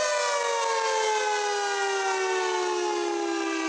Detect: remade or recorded recorded